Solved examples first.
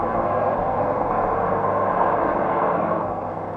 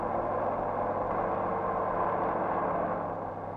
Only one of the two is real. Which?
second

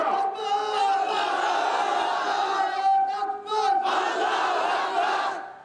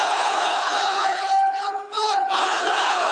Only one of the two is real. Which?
first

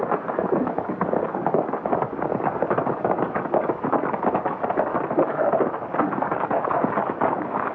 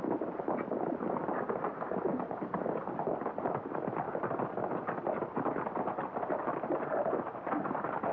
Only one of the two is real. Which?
second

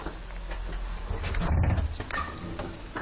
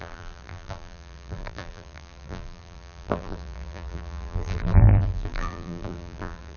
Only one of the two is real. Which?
first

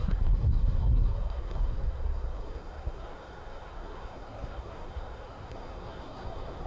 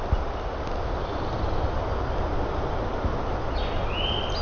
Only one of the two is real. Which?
second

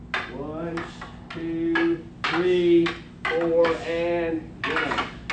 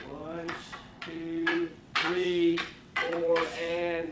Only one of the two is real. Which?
first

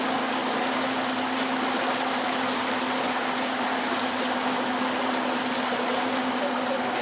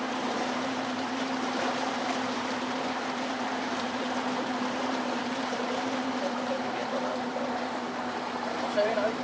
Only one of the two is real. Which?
first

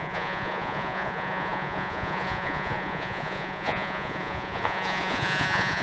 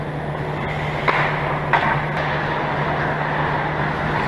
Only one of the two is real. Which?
second